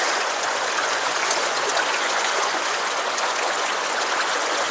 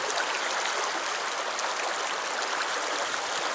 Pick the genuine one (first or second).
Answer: second